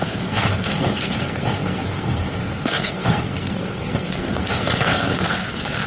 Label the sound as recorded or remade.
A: remade